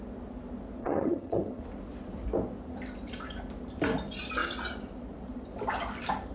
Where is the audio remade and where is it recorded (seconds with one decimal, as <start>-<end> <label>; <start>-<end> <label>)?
0.0-0.8 recorded; 0.8-1.6 remade; 1.6-6.3 recorded